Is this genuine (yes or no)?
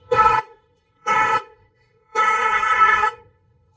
no